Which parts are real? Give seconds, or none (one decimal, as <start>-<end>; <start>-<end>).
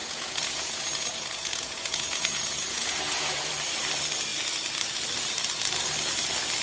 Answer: 3.5-6.6